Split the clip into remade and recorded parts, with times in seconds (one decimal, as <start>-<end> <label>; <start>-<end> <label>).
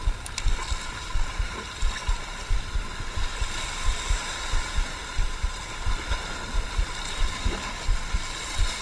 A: 0.0-8.8 recorded